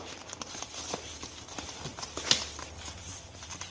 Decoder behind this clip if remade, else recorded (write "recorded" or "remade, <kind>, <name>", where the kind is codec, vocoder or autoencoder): recorded